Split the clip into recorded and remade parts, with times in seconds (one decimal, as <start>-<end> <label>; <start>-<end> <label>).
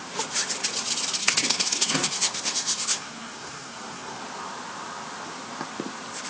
0.0-1.2 recorded; 1.2-4.2 remade; 4.2-6.3 recorded